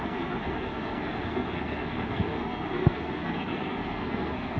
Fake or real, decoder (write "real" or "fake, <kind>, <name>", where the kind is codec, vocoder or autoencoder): fake, codec, SNAC